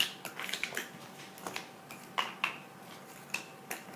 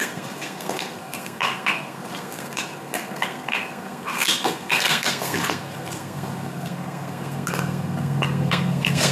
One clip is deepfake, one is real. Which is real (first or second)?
first